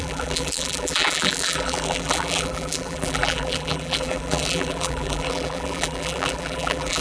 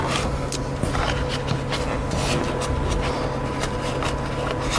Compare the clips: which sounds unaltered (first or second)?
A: second